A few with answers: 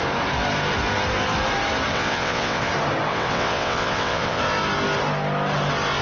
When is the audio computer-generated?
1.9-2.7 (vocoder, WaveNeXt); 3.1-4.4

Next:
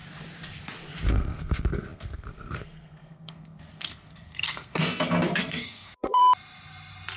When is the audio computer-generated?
1.1-6.2 (codec, SNAC)

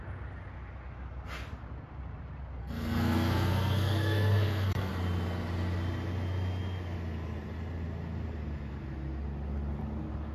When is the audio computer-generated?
2.6-4.9 (codec, SNAC)

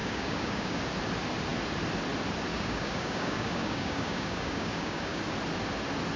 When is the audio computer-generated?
0.0-0.8 (codec, DAC); 2.5-5.2

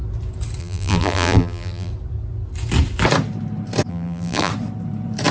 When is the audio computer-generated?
0.6-1.9 (vocoder, BigVGAN v2); 3.9-4.5

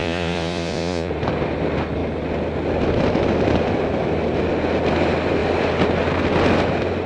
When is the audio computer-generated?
0.0-1.1 (vocoder, Vocos)